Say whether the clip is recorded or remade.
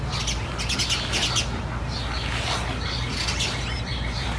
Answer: recorded